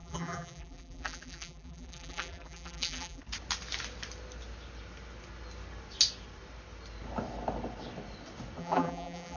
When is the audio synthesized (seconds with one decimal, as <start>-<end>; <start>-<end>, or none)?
0.0-3.2; 8.6-9.4